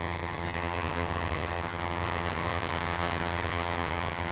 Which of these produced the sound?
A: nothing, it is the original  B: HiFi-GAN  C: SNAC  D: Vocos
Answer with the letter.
B